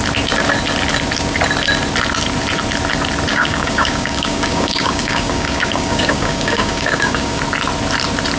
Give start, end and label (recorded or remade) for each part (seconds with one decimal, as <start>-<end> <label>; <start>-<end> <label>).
0.0-3.3 recorded; 3.3-7.4 remade; 7.4-8.4 recorded